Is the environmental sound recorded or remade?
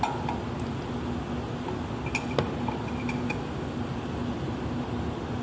recorded